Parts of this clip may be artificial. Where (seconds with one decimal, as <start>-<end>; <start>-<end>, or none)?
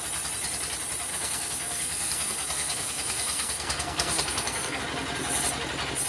1.1-4.8